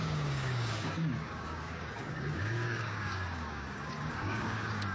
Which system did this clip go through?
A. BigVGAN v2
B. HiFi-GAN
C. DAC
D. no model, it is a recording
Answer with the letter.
C